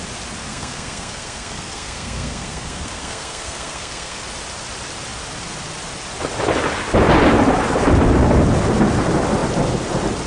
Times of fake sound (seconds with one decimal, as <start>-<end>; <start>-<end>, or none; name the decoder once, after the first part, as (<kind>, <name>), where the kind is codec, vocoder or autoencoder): 0.5-4.2 (codec, SNAC)